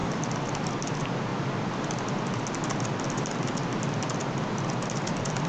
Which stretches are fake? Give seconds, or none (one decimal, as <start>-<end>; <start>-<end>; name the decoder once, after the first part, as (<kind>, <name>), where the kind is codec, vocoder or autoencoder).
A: none